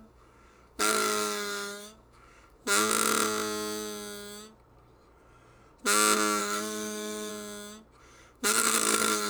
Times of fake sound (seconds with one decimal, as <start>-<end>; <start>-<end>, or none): 0.0-2.6; 6.4-7.3; 8.0-9.3